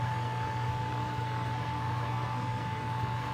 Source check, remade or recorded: remade